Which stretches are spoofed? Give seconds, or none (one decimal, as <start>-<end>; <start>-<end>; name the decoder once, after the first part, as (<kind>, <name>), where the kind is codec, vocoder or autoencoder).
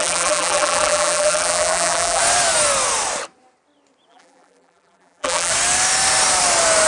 0.0-2.2 (vocoder, BigVGAN v2); 4.1-5.5